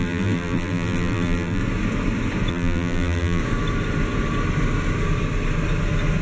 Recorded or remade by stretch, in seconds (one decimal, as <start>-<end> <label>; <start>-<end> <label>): 0.0-1.6 remade; 1.6-2.5 recorded; 2.5-3.4 remade; 3.4-6.2 recorded